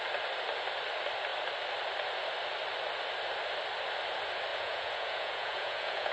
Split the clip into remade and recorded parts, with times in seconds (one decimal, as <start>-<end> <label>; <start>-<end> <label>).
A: 0.0-4.5 recorded; 4.5-6.1 remade